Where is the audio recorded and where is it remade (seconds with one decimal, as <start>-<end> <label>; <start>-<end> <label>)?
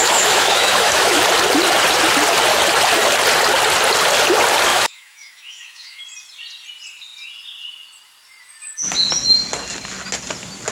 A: 0.0-1.2 remade; 1.2-4.7 recorded; 4.7-6.0 remade; 6.0-10.7 recorded